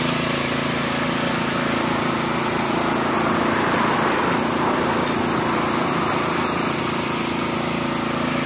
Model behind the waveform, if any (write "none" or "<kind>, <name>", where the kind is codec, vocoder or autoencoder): none